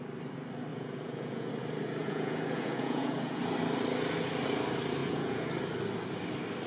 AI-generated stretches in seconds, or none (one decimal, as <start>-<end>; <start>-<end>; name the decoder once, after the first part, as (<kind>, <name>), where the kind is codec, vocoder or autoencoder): 0.7-1.5 (vocoder, Vocos); 2.0-3.4; 5.0-5.5